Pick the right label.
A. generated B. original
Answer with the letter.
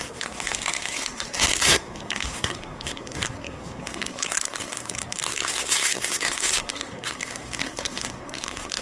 A